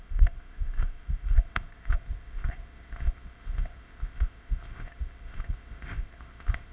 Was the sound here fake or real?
fake